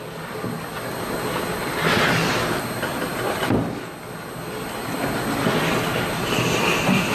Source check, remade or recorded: recorded